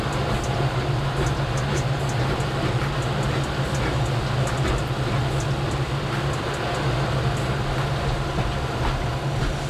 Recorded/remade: recorded